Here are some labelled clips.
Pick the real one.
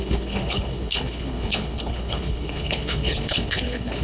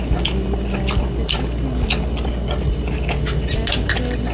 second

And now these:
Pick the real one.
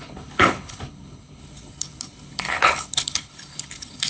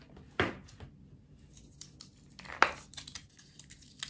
second